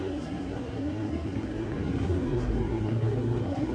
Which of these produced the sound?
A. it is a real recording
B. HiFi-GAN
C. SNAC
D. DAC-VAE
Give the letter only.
C